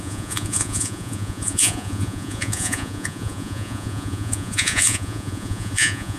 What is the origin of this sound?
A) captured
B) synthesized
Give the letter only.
B